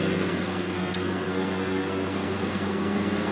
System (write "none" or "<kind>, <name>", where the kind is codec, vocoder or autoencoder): codec, SNAC